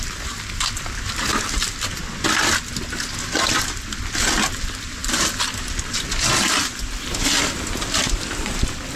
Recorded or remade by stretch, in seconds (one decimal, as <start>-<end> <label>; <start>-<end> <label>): 0.0-9.0 recorded